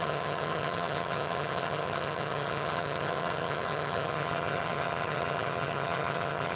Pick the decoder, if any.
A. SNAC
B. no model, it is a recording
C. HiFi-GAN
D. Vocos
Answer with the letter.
C